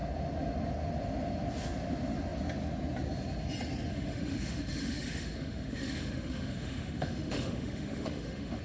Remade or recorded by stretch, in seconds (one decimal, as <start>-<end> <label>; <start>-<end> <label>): 0.0-3.9 recorded; 3.9-8.6 remade